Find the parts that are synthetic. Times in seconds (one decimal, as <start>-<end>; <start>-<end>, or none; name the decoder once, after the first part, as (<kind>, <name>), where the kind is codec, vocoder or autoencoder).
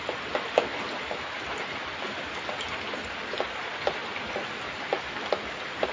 none